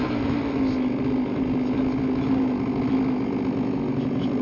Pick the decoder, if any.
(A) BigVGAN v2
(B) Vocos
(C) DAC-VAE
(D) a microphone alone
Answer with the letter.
D